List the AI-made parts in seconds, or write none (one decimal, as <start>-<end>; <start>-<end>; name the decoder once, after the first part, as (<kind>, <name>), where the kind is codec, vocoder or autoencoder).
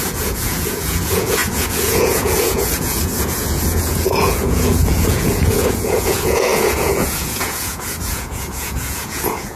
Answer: 0.0-9.6 (vocoder, Vocos)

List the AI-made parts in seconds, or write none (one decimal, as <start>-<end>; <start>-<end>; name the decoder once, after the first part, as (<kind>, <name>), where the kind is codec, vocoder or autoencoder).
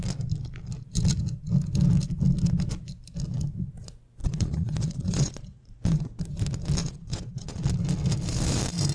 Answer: 4.2-6.2 (vocoder, Vocos); 6.8-7.6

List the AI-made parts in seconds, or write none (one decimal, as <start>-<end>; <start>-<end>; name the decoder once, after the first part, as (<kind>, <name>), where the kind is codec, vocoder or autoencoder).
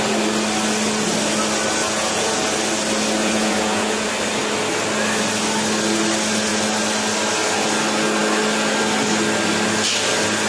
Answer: 1.8-2.4 (vocoder, Vocos); 3.2-4.1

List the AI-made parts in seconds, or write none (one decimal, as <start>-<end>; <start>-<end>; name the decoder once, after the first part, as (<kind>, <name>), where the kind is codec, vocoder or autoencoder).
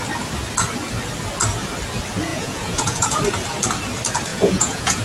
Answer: 2.3-3.2 (vocoder, Vocos); 4.3-5.0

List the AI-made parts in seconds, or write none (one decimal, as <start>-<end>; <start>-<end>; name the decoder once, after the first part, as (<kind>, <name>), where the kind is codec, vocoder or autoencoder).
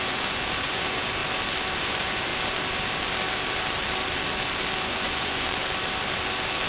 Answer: 0.0-1.2 (vocoder, Vocos); 1.8-2.3; 4.9-5.6